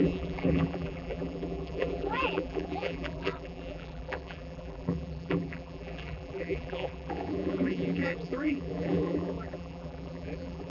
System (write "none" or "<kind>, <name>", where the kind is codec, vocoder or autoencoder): vocoder, BigVGAN v2